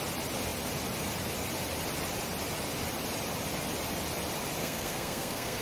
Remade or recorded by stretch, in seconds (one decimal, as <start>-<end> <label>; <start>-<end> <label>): 0.0-4.6 recorded; 4.6-5.6 remade